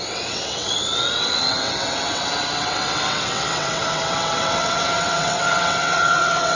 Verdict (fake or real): fake